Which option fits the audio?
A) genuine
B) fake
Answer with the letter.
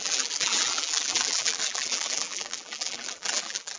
B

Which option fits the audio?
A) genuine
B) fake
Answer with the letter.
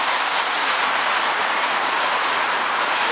B